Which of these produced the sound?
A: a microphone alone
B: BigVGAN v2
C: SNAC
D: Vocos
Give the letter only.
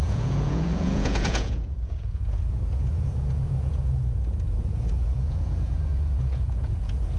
D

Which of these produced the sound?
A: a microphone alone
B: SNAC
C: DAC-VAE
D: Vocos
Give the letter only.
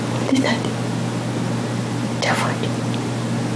A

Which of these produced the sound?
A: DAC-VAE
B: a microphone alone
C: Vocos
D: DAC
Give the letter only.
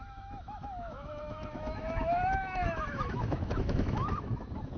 A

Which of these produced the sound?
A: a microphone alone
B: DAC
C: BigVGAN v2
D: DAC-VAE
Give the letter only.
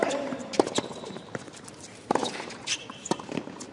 C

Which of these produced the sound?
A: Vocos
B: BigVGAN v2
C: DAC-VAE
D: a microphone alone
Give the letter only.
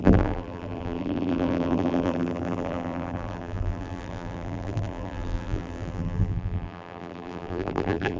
B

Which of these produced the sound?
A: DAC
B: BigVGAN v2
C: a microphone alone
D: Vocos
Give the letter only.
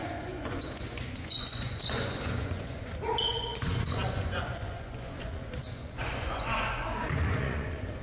D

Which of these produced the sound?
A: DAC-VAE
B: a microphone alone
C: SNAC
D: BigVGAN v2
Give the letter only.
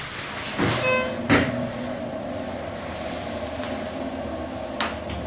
B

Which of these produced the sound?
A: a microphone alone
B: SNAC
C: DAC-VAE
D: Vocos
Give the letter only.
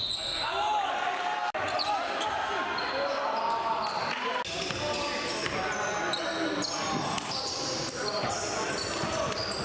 A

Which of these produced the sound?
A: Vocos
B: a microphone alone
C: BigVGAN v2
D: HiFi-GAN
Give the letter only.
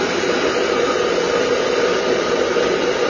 B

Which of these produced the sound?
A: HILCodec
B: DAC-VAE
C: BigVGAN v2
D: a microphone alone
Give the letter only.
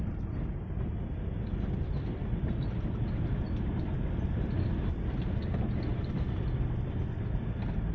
D